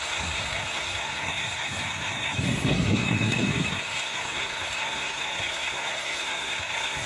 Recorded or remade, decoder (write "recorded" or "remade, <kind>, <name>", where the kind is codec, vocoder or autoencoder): remade, codec, SNAC